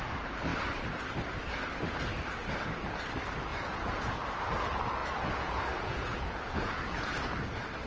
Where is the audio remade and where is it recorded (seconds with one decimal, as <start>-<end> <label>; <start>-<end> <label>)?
0.0-3.5 recorded; 3.5-4.2 remade; 4.2-5.0 recorded; 5.0-7.2 remade; 7.2-7.9 recorded

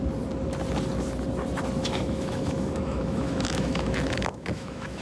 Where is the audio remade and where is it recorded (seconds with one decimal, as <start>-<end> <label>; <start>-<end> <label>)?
0.0-1.8 recorded; 1.8-5.0 remade

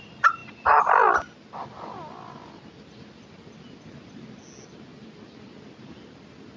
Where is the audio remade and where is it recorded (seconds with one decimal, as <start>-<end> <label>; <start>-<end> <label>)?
0.0-6.6 recorded

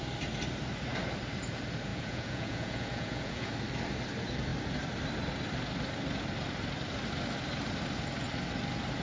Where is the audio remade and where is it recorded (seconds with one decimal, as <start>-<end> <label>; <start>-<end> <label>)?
0.0-1.9 recorded; 1.9-3.5 remade; 3.5-9.0 recorded

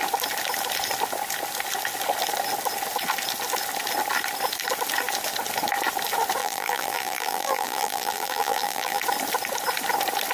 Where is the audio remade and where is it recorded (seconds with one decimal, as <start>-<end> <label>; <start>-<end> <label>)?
0.0-6.4 recorded; 6.4-9.0 remade; 9.0-10.3 recorded